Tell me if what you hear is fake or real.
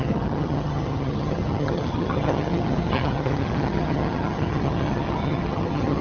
fake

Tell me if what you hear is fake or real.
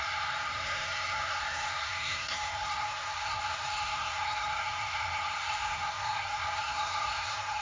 fake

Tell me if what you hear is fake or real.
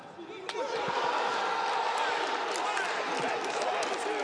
real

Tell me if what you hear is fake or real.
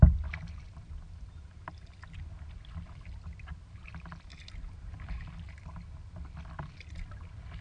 real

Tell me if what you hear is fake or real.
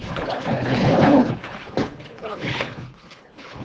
fake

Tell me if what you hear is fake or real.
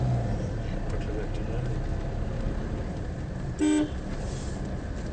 real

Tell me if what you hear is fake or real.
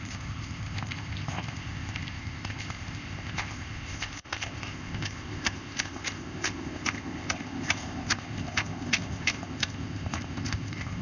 fake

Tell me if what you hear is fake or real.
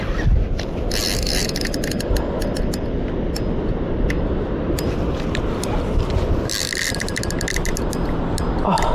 real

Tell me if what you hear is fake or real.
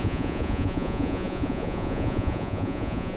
fake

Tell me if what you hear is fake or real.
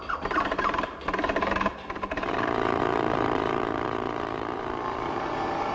fake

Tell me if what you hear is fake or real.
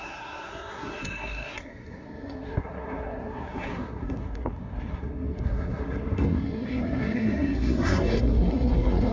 fake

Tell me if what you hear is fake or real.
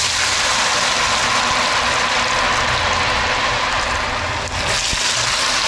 real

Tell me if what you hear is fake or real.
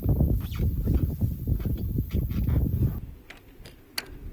real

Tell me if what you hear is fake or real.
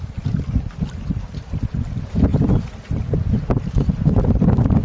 real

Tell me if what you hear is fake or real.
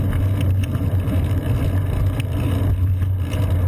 real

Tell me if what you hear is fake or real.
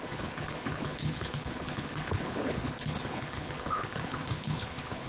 fake